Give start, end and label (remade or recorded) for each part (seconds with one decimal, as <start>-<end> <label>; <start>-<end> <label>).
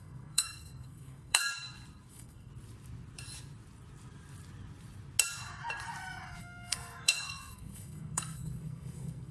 0.0-1.5 remade; 1.5-2.1 recorded; 2.1-2.5 remade; 2.5-6.4 recorded; 6.4-9.3 remade